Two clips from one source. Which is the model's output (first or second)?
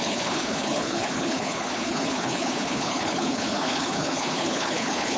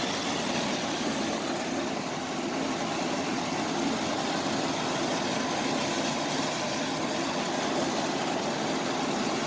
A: first